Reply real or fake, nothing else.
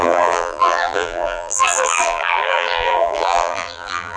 fake